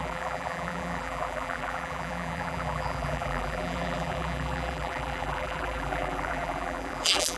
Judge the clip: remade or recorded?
remade